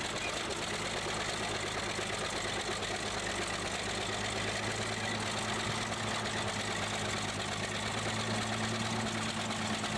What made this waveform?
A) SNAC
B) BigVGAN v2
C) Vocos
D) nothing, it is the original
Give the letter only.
D